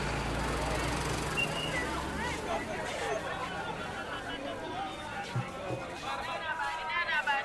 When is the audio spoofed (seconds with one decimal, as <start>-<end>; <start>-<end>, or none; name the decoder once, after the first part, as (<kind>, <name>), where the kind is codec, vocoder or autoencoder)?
none